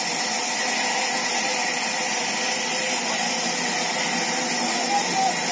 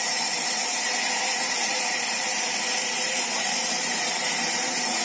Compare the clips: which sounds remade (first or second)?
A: second